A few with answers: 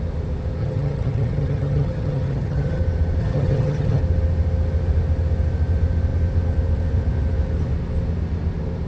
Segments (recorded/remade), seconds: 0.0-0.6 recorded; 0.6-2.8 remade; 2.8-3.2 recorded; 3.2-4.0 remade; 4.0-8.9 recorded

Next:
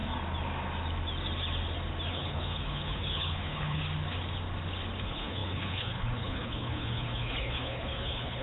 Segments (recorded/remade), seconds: 0.0-2.1 recorded; 2.1-3.8 remade; 3.8-5.0 recorded; 5.0-8.4 remade

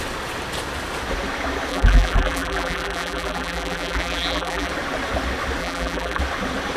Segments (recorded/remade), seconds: 0.0-1.7 recorded; 1.7-4.7 remade; 4.7-5.6 recorded; 5.6-6.2 remade; 6.2-6.8 recorded

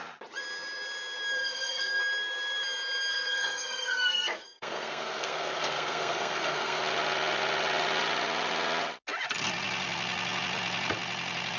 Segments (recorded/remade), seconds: 0.0-1.4 recorded; 1.4-2.0 remade; 2.0-3.1 recorded; 3.1-6.8 remade; 6.8-11.6 recorded

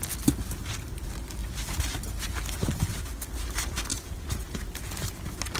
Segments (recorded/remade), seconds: 0.0-3.9 recorded; 3.9-4.6 remade; 4.6-5.6 recorded

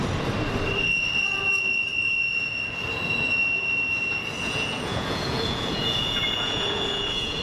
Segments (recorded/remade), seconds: 0.0-4.4 recorded; 4.4-7.4 remade

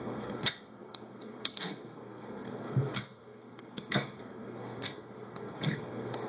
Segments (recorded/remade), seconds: 0.0-6.3 remade